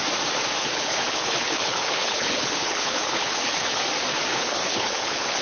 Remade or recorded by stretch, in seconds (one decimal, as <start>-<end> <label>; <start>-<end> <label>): 0.0-0.6 recorded; 0.6-3.8 remade; 3.8-4.3 recorded; 4.3-5.4 remade